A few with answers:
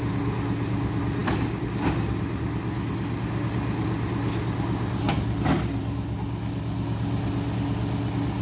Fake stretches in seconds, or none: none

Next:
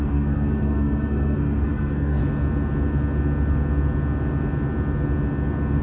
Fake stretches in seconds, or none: 0.0-2.2 (codec, SNAC)

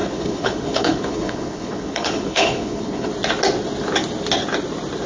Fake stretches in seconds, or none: 0.0-3.1 (codec, HILCodec)

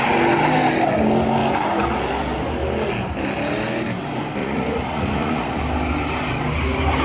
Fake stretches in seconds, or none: 4.4-5.6 (vocoder, Vocos)

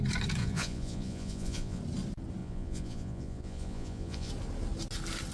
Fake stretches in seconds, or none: 0.4-1.8 (vocoder, Vocos); 2.4-4.3

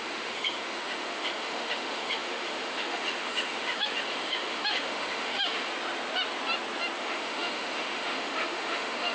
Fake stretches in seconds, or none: 0.0-5.7 (autoencoder, DAC-VAE); 7.0-9.1

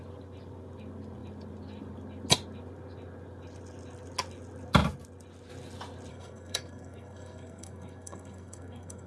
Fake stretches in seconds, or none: 6.1-9.1 (codec, SNAC)

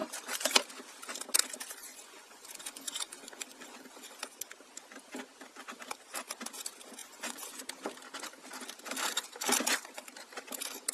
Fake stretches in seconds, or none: 1.8-3.9 (vocoder, Vocos); 7.0-7.6